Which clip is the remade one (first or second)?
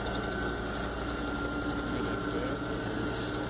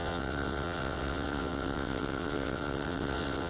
second